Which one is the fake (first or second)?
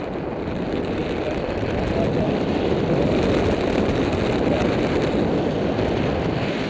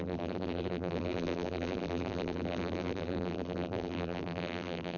second